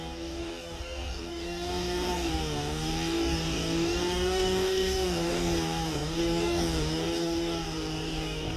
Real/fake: fake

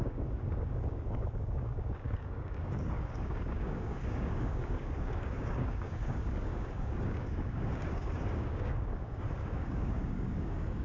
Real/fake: fake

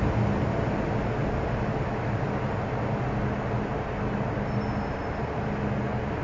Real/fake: real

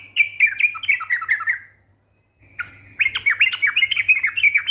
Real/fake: real